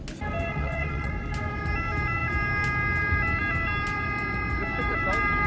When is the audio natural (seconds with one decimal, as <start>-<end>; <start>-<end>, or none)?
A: 0.0-0.5; 1.1-5.5